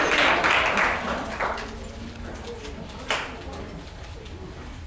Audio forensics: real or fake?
real